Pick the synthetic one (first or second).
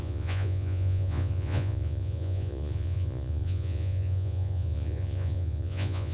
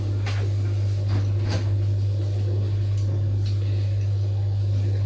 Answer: first